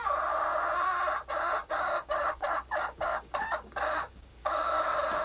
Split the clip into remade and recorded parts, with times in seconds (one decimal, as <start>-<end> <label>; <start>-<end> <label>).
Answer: 0.0-1.6 recorded; 1.6-4.7 remade; 4.7-5.2 recorded